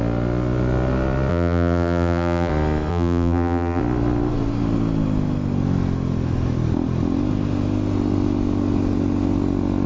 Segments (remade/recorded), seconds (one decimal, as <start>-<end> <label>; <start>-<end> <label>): 0.0-1.3 recorded; 1.3-2.5 remade; 2.5-2.9 recorded; 2.9-3.8 remade; 3.8-9.9 recorded